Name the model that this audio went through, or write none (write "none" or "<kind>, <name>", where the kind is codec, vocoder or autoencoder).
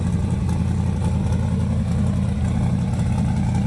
none